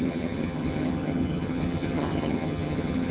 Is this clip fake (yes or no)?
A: yes